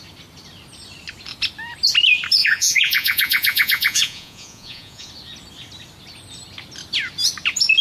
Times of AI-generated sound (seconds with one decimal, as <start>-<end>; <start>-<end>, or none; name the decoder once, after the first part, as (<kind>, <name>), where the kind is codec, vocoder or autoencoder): 2.4-5.1 (vocoder, Vocos)